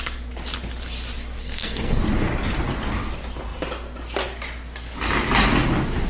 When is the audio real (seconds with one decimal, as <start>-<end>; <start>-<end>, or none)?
0.0-1.4; 2.0-6.1